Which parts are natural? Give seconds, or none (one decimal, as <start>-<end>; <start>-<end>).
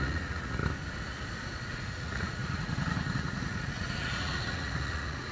0.6-1.7